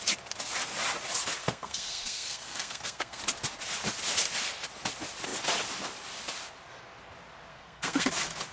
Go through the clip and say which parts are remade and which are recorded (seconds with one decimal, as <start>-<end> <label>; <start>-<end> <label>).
0.0-1.4 recorded; 1.4-3.2 remade; 3.2-7.5 recorded; 7.5-8.1 remade; 8.1-8.5 recorded